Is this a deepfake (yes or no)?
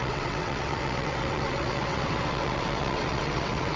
yes